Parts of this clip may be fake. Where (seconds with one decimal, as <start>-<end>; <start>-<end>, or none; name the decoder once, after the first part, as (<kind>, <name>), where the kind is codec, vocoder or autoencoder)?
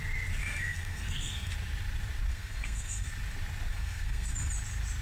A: 0.4-1.5 (codec, SNAC); 2.3-3.1; 3.7-4.3